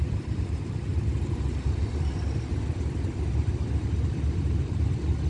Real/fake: real